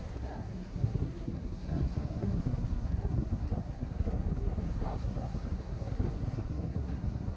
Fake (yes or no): yes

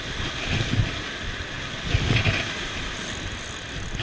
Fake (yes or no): no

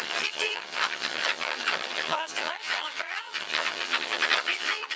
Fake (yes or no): yes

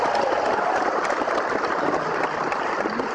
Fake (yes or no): no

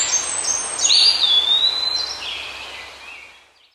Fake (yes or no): no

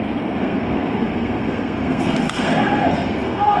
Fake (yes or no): yes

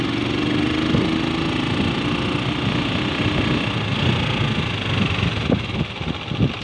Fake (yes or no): no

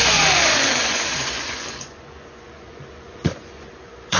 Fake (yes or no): yes